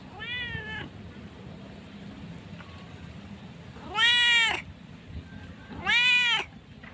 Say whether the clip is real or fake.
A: real